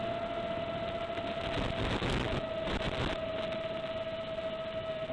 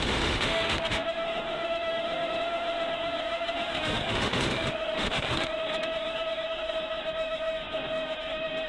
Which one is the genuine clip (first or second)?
first